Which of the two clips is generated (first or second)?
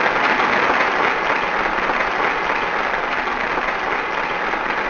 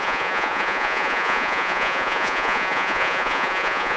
second